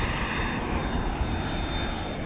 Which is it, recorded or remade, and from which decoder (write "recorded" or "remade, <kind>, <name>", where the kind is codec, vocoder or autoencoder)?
recorded